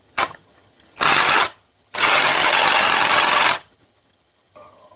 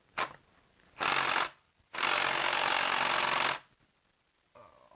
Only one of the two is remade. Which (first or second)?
first